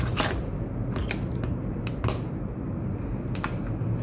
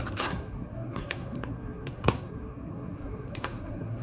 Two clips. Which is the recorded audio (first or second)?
first